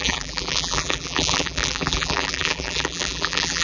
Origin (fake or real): fake